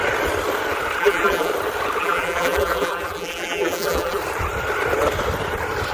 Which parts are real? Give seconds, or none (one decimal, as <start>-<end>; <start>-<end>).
0.0-1.0; 1.5-2.0; 4.2-5.9